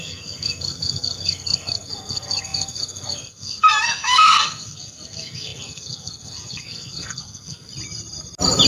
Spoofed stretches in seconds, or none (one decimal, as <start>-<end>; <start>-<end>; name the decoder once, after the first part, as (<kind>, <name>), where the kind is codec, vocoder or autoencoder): 0.0-7.7 (codec, SNAC)